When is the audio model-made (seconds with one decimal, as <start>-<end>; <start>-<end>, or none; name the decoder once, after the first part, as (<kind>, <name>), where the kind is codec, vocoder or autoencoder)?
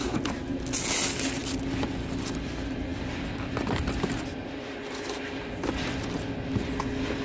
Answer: none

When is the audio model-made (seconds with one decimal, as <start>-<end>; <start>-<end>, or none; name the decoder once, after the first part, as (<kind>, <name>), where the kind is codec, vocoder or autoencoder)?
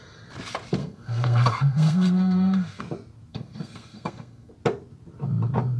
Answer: 0.8-2.8 (codec, SNAC); 3.3-4.5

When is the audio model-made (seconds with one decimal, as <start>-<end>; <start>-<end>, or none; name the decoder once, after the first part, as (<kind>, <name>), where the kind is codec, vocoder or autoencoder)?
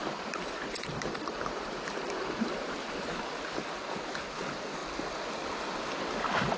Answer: 0.0-3.0 (vocoder, BigVGAN v2)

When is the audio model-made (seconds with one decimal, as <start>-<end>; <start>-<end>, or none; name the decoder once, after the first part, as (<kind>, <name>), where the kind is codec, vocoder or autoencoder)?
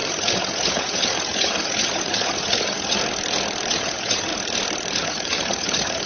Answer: 0.0-3.0 (vocoder, HiFi-GAN); 3.7-4.3; 5.0-6.1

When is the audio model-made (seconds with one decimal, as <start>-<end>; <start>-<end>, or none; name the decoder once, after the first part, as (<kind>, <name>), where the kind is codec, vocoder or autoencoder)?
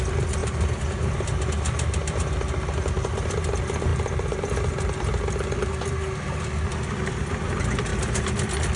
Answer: 0.0-0.4 (vocoder, BigVGAN v2); 3.0-7.9